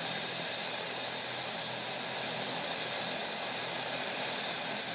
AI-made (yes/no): no